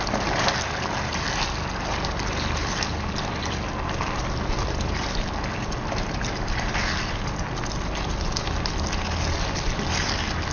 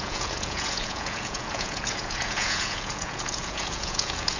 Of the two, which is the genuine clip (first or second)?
first